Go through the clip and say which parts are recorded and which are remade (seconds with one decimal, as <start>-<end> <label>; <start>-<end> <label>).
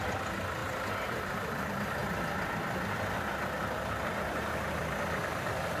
0.0-5.8 remade